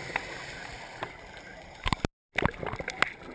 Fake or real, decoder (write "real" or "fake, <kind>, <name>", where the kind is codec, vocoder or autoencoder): real